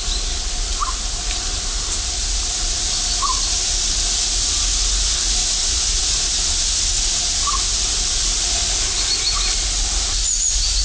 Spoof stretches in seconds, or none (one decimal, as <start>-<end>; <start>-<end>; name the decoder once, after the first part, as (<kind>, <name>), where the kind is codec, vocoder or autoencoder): none